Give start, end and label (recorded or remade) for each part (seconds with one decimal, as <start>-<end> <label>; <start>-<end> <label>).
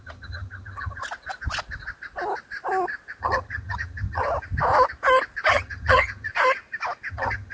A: 0.0-1.0 remade; 1.0-3.2 recorded; 3.2-4.2 remade; 4.2-5.5 recorded; 5.5-6.3 remade; 6.3-7.1 recorded; 7.1-7.5 remade